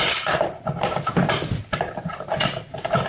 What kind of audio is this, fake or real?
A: real